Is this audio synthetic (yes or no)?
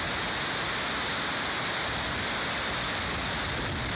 no